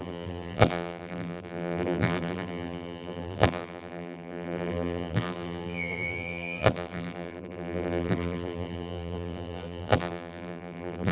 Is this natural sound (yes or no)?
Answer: no